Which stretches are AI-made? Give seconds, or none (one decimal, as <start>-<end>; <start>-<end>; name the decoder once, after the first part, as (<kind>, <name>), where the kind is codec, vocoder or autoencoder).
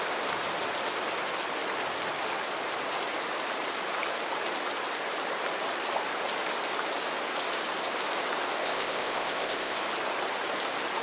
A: 8.6-9.8 (codec, ZipCodec)